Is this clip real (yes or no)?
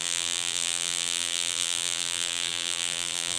no